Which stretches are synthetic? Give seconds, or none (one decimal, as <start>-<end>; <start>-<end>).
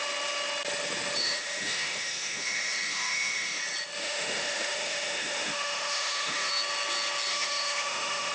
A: 1.2-3.6; 4.0-6.5; 7.3-8.3